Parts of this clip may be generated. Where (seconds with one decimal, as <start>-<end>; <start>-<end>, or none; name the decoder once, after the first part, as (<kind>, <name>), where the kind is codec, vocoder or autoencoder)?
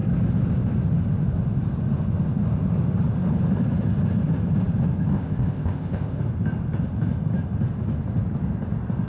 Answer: 5.1-6.2 (codec, ZipCodec)